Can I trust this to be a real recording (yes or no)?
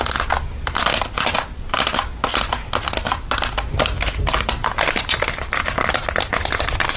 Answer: yes